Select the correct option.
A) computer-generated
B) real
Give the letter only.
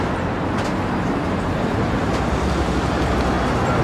B